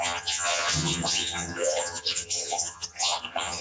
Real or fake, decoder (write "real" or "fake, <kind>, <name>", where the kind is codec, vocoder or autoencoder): fake, vocoder, HiFi-GAN